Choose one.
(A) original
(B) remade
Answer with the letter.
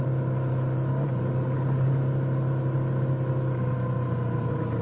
A